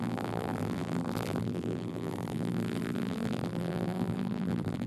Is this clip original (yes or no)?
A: no